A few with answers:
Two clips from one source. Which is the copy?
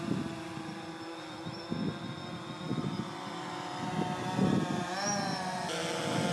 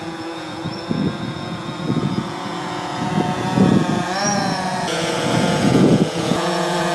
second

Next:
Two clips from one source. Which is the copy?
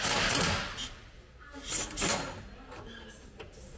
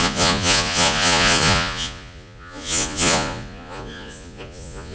second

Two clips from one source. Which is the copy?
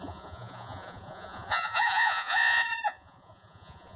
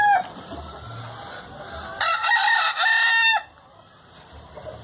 first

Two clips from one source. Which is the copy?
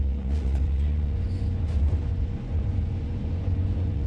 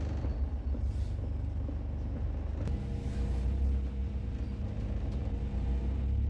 first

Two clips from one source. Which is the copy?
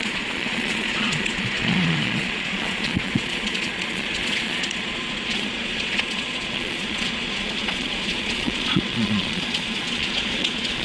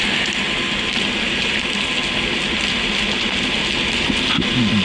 first